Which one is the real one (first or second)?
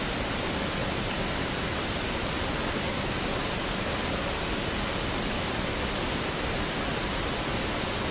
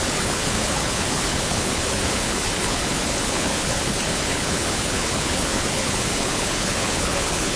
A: first